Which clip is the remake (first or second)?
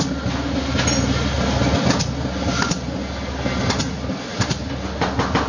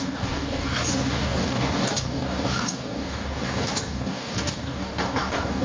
second